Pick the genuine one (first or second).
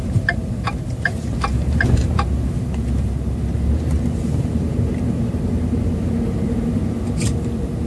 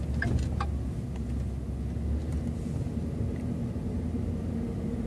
second